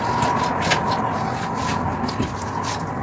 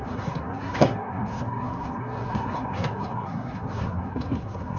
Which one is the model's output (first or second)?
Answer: second